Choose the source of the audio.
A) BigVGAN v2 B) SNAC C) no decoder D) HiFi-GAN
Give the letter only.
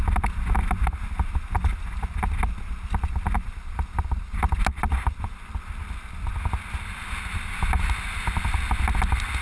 C